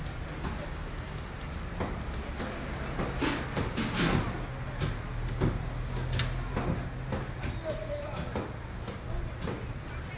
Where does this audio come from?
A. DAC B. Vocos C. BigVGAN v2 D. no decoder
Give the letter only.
D